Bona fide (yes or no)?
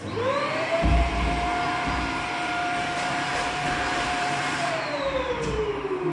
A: no